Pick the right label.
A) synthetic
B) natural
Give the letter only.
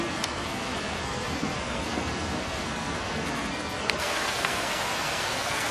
A